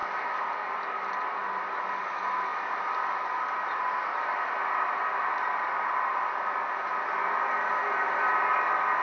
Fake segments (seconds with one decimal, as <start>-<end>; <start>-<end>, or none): none